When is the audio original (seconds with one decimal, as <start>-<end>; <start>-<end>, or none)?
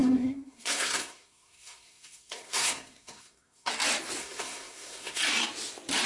3.7-4.2; 5.2-6.1